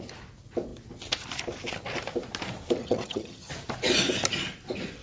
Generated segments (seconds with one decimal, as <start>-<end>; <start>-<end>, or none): 2.8-3.5